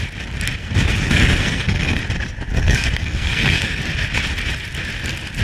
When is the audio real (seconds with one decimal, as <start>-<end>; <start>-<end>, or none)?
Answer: 0.0-0.6; 2.0-2.5; 3.8-5.4